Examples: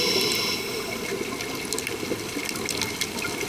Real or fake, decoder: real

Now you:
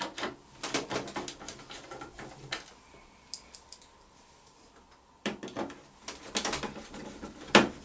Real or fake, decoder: real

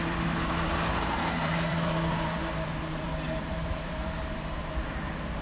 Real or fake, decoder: fake, vocoder, BigVGAN v2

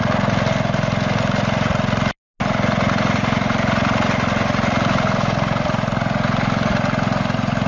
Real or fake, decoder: real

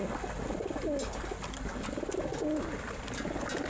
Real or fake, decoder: real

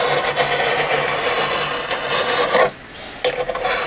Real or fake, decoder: real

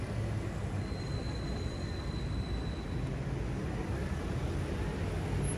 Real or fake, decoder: real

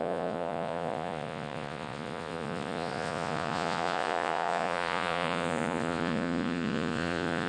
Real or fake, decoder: fake, vocoder, Vocos